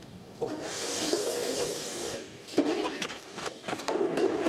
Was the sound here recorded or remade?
remade